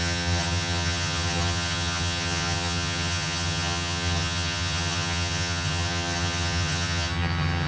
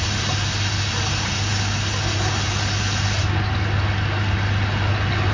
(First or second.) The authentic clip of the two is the second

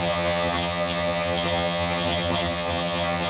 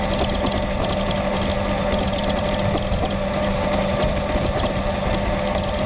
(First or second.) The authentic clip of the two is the second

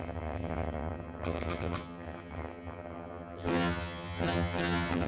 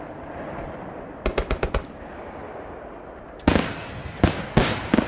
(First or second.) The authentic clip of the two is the second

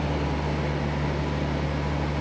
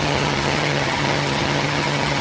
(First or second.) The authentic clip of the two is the first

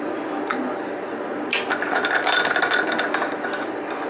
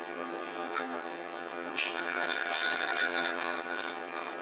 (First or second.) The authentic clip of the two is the first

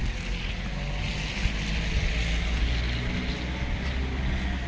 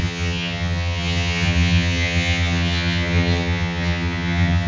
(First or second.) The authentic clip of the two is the first